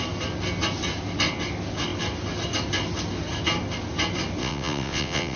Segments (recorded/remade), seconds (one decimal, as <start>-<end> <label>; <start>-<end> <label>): 0.0-4.4 recorded; 4.4-5.4 remade